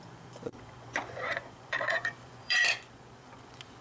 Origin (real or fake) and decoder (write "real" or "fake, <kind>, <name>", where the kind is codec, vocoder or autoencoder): fake, vocoder, Vocos